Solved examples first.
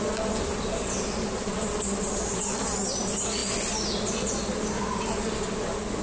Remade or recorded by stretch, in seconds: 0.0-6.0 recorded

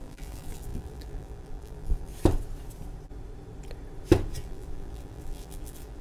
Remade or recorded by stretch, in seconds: 0.0-2.1 remade; 2.1-4.3 recorded; 4.3-6.0 remade

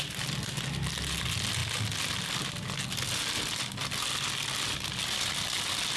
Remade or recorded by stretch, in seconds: 0.0-6.0 recorded

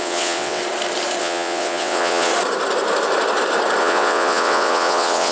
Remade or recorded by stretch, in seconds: 0.0-0.6 remade; 0.6-1.2 recorded; 1.2-2.3 remade; 2.3-3.8 recorded; 3.8-5.3 remade